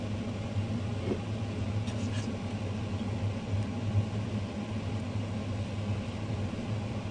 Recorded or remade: recorded